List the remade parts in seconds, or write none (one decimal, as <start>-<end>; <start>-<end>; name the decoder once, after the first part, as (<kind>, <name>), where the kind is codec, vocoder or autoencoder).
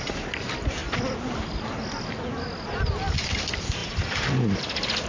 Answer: none